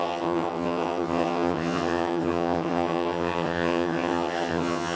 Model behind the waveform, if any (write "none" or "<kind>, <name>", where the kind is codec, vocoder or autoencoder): vocoder, HiFi-GAN